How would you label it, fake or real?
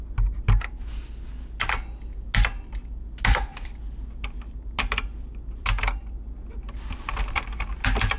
real